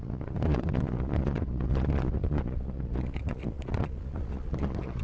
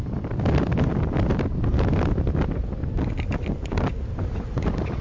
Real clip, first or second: second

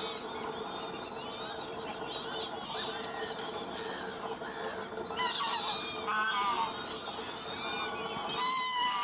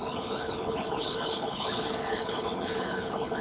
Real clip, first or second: first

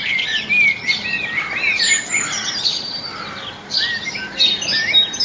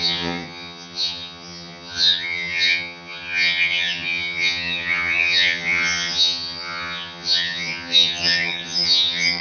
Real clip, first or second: first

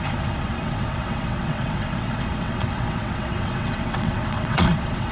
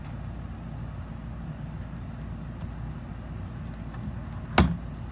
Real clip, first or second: second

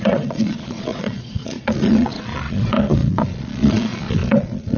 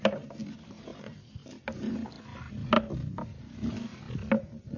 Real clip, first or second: second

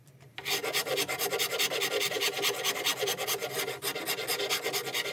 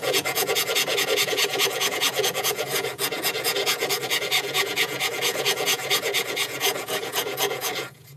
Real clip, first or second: first